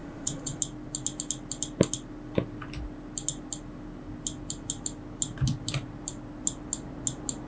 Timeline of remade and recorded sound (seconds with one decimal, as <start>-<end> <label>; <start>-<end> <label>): 0.0-0.6 remade; 0.6-7.5 recorded